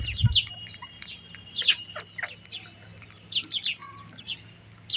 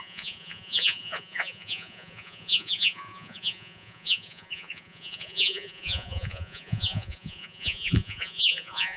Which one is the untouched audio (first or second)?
first